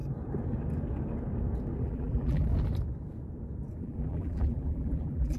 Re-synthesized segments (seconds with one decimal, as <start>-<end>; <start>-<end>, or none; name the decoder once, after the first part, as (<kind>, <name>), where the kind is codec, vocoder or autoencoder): 1.8-2.5 (vocoder, BigVGAN v2); 3.8-5.4